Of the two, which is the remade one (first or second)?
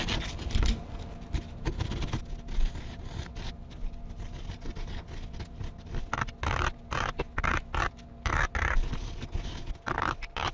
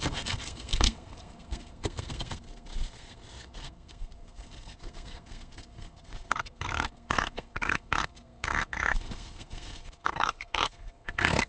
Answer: second